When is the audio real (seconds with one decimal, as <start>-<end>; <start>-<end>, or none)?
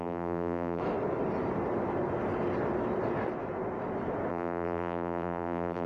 0.8-4.3